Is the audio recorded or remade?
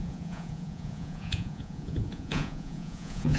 remade